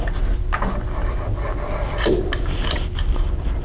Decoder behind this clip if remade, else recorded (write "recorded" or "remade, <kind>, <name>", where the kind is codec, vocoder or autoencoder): recorded